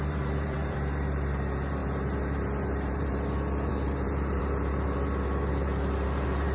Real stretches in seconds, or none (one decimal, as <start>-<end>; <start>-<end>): none